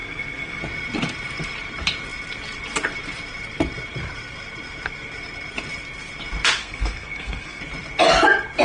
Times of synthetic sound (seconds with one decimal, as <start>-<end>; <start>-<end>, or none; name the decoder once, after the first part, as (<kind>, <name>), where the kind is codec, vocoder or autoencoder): 0.0-0.6 (codec, SNAC); 6.6-7.6